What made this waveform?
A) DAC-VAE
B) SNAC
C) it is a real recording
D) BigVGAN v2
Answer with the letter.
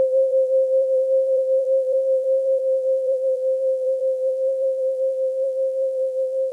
D